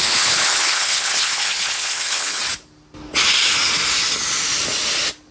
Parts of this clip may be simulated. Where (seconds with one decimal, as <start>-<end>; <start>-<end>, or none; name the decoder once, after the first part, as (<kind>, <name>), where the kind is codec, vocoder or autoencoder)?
0.0-2.4 (codec, HILCodec)